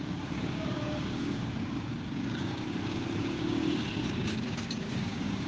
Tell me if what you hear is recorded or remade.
remade